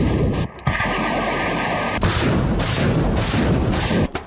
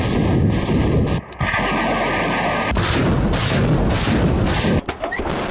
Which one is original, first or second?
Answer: second